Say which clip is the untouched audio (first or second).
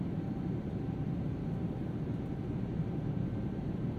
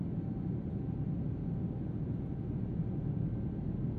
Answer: second